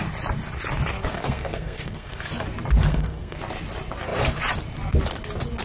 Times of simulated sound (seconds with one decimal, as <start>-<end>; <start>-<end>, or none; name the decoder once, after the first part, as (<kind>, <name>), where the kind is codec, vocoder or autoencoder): 1.1-2.2 (codec, SNAC); 2.9-3.4